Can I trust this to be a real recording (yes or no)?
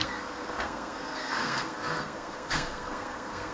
no